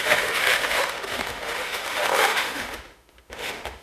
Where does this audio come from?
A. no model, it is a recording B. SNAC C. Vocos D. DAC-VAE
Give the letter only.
D